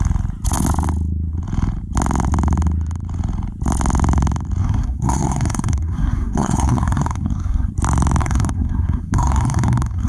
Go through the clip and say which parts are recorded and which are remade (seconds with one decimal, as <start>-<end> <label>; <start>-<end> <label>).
0.0-4.6 recorded; 4.6-7.7 remade; 7.7-8.2 recorded; 8.2-10.1 remade